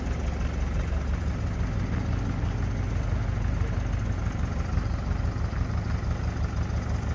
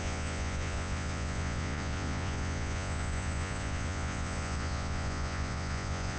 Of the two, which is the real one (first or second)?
first